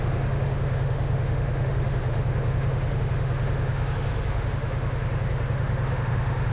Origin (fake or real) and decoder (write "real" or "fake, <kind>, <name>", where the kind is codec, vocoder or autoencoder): fake, autoencoder, DAC-VAE